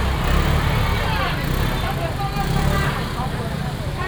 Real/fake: real